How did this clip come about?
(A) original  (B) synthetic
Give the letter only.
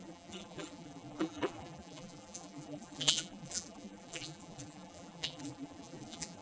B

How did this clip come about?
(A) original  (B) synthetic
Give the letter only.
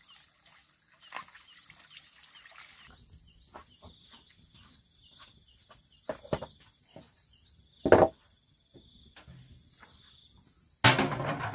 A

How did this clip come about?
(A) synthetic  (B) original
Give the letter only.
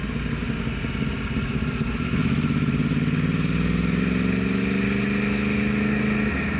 B